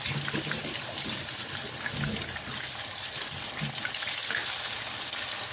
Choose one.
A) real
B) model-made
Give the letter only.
A